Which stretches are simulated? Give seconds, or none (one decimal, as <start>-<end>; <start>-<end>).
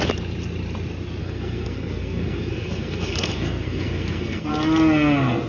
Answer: 1.2-4.5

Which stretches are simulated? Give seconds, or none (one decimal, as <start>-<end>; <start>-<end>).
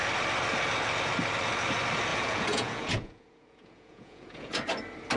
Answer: 2.1-4.5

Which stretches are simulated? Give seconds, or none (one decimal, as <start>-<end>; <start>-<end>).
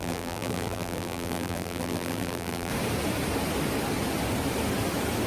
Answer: 0.0-2.7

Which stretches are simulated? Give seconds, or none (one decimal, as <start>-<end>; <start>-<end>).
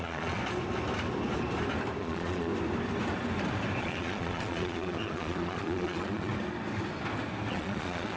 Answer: 0.0-0.4; 2.0-2.5; 3.8-6.3; 7.5-8.2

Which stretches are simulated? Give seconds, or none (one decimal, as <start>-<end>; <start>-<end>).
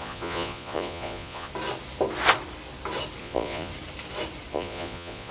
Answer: 0.0-1.5; 3.2-3.7; 4.5-5.3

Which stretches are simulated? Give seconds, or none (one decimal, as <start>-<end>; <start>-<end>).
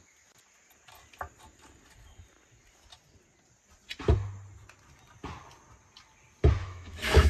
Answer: 6.6-7.3